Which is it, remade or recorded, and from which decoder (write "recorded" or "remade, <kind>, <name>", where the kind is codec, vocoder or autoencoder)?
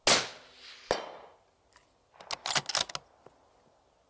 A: recorded